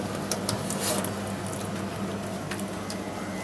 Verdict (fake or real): real